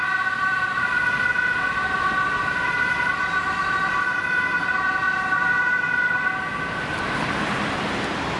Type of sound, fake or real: real